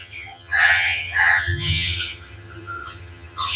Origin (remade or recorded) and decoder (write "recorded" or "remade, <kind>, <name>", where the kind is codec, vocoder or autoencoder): remade, vocoder, HiFi-GAN